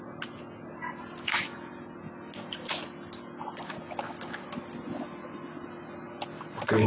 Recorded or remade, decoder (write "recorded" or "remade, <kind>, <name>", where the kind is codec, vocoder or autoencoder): recorded